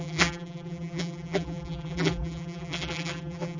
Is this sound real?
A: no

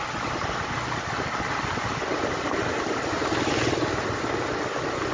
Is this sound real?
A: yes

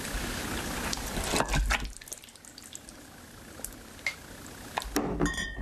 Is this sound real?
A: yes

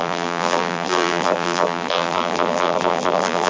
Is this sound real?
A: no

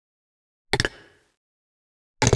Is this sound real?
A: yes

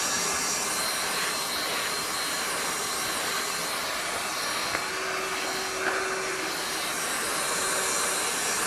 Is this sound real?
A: yes